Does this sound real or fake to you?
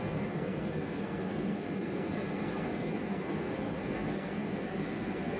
fake